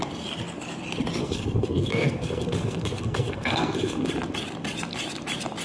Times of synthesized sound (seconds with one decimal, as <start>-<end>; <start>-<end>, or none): 1.2-4.1